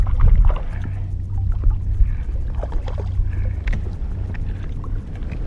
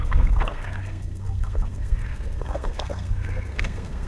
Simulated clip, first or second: second